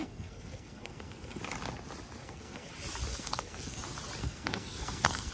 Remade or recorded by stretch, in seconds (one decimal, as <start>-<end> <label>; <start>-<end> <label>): 0.0-1.4 remade; 1.4-2.2 recorded; 2.2-2.7 remade; 2.7-3.1 recorded; 3.1-3.8 remade; 3.8-4.2 recorded; 4.2-5.3 remade